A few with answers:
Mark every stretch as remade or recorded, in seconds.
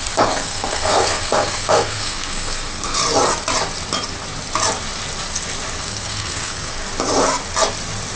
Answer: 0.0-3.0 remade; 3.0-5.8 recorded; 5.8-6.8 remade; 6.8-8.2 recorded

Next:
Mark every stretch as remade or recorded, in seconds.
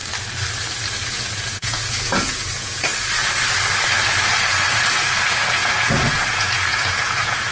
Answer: 0.0-1.3 recorded; 1.3-2.9 remade; 2.9-4.9 recorded; 4.9-7.5 remade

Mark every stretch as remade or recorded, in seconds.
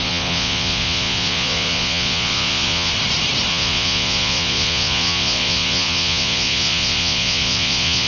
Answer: 0.0-2.9 remade; 2.9-3.5 recorded; 3.5-8.1 remade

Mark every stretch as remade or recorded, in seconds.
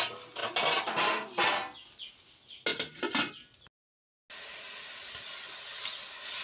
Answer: 0.0-6.4 recorded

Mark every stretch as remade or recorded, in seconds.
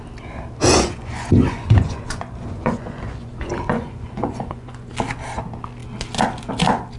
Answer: 0.0-0.7 recorded; 0.7-4.9 remade; 4.9-7.0 recorded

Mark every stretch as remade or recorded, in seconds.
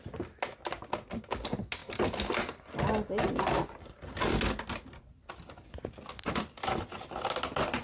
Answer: 0.0-7.8 recorded